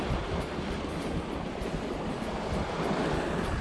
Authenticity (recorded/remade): recorded